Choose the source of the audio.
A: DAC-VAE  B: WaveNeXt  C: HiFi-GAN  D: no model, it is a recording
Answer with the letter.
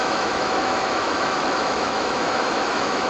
A